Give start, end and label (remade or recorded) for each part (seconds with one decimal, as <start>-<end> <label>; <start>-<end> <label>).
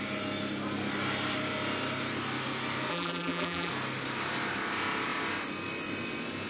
0.0-2.9 recorded; 2.9-3.7 remade; 3.7-6.5 recorded